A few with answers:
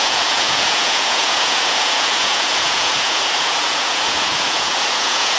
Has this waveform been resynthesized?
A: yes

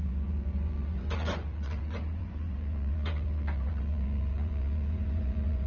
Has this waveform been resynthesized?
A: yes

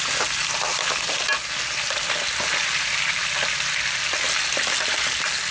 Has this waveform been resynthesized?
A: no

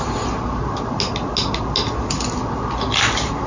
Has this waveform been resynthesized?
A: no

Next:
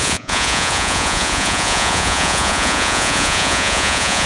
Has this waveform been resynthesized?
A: yes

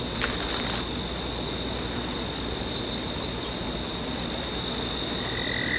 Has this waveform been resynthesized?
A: no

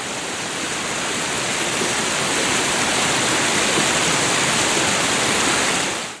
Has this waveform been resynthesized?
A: no